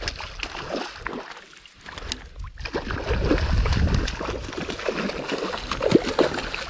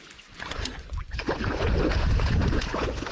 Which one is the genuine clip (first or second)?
first